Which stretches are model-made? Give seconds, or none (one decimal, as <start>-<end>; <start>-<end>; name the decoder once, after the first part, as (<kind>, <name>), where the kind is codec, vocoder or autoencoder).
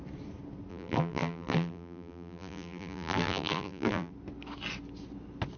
0.7-4.1 (vocoder, BigVGAN v2)